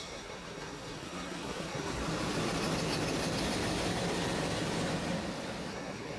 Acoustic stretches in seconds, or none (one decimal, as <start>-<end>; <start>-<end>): 2.0-5.7